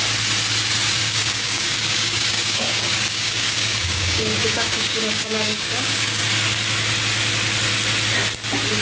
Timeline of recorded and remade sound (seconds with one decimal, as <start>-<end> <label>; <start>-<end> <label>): 0.0-1.0 recorded; 1.0-6.2 remade; 6.2-8.8 recorded